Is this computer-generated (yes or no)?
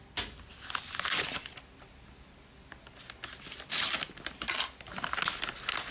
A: no